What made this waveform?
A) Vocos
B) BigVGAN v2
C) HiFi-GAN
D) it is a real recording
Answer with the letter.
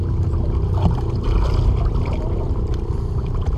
D